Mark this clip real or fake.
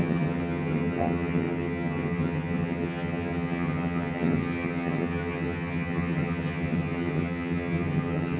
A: fake